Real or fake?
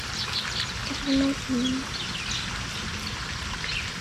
real